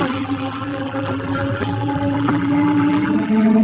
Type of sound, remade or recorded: remade